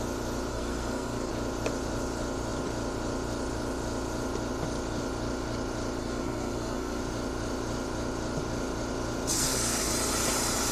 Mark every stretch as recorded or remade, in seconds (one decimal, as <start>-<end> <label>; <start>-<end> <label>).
0.0-0.5 recorded; 0.5-1.3 remade; 1.3-6.0 recorded; 6.0-7.0 remade; 7.0-9.3 recorded; 9.3-9.9 remade; 9.9-10.7 recorded